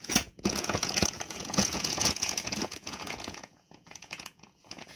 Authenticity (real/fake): fake